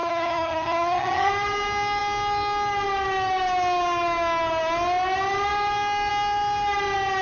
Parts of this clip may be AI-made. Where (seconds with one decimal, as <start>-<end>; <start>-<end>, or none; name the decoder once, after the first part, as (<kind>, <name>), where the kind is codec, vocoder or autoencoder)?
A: 0.0-1.3 (vocoder, HiFi-GAN)